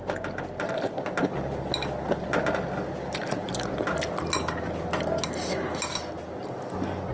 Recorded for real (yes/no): yes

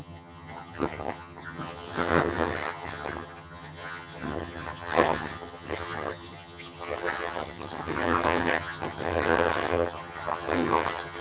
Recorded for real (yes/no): no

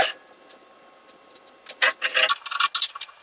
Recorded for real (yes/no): yes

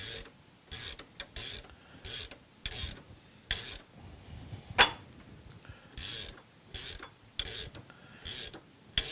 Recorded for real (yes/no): yes